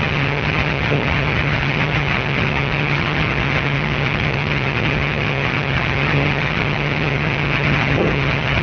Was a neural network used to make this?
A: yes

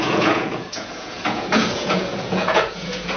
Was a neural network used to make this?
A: yes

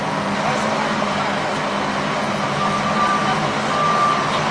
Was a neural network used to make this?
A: no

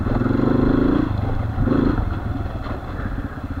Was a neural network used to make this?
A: no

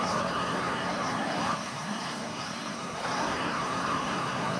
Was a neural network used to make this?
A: yes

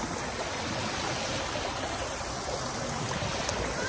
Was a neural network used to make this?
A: no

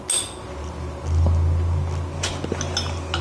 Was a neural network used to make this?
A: no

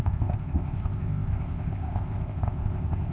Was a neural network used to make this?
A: yes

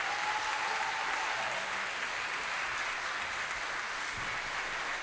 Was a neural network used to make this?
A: no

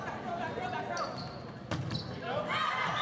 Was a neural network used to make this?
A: no